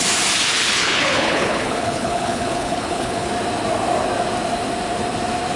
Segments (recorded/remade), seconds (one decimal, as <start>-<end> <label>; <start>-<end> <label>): 0.0-0.5 recorded; 0.5-3.3 remade; 3.3-5.6 recorded